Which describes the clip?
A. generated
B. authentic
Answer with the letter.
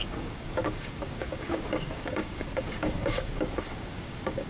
A